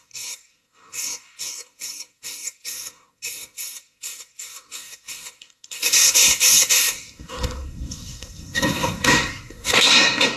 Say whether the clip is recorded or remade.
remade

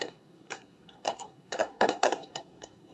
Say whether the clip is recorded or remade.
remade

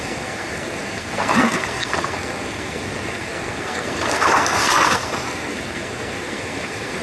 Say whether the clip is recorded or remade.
remade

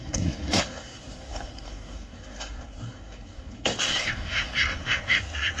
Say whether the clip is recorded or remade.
remade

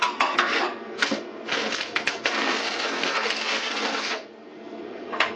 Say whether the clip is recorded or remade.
remade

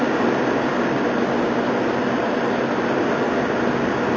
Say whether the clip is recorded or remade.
recorded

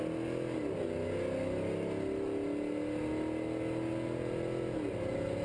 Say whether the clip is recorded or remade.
recorded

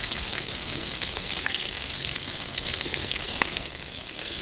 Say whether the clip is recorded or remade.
remade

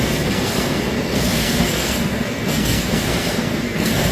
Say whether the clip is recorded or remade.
remade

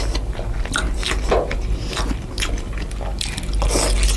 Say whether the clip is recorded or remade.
recorded